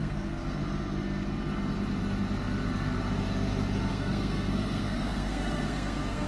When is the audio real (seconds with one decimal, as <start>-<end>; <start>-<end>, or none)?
0.6-3.9